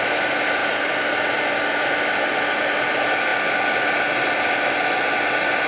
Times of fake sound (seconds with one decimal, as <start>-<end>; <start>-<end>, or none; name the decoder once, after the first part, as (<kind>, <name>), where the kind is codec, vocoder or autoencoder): none